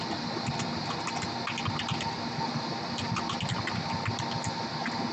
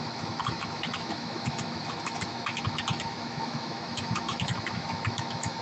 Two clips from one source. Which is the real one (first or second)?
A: first